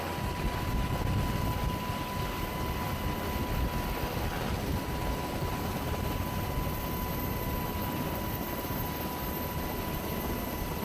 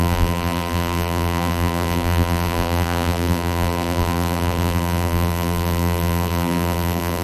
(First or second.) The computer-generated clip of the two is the second